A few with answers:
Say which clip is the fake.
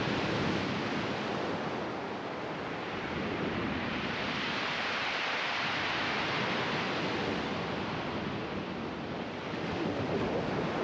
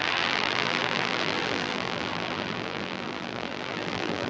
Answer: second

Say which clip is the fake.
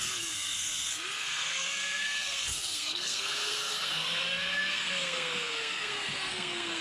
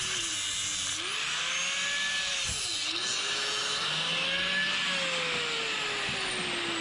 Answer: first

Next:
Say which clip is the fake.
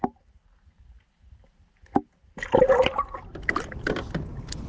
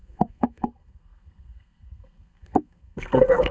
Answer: second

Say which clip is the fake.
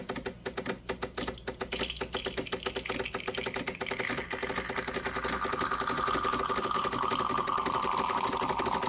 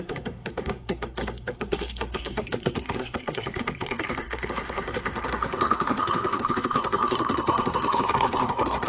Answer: second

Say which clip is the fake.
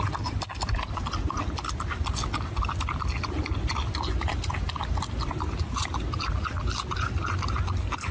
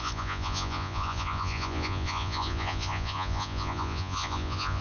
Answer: second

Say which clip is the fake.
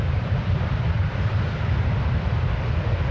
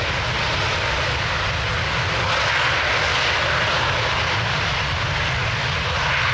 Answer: first